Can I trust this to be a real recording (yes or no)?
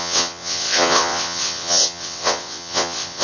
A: no